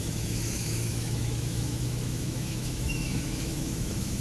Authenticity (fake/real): fake